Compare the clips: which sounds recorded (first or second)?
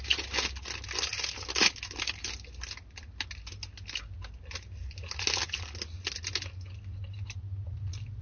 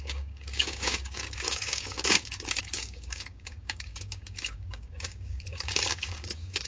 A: first